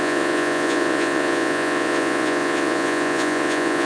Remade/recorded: remade